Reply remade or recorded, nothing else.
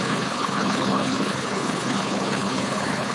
remade